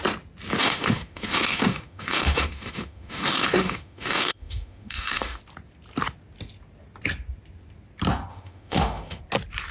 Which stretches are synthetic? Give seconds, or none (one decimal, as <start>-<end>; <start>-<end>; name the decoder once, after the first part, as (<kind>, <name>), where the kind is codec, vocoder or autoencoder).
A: 0.6-5.4 (autoencoder, DAC-VAE); 8.3-9.2